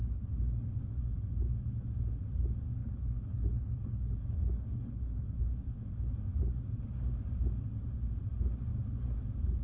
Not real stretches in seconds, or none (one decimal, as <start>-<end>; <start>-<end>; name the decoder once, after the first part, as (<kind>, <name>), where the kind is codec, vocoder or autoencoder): 2.8-5.4 (codec, HILCodec)